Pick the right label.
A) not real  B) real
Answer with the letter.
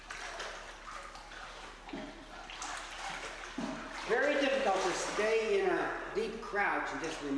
B